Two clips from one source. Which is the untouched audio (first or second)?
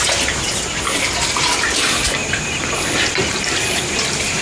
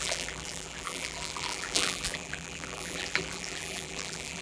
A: first